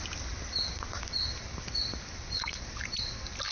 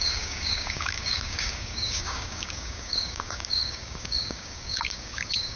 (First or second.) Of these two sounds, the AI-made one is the second